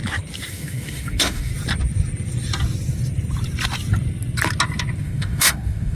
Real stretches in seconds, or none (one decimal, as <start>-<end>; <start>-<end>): 0.0-0.5; 1.5-5.0